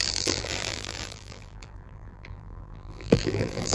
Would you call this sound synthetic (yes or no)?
yes